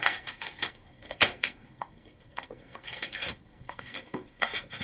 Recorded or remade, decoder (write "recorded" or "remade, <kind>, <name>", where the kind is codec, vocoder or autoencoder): remade, codec, SNAC